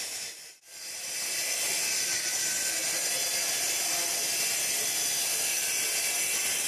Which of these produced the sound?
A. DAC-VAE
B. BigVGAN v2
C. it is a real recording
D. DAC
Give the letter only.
C